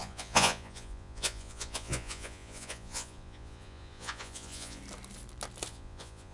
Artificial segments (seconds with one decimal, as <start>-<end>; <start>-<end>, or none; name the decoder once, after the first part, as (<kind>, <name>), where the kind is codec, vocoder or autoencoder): 0.0-4.8 (vocoder, Vocos); 5.7-6.3